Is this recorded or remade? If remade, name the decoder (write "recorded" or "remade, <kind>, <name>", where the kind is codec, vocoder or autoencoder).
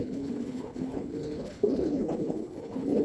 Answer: remade, codec, HILCodec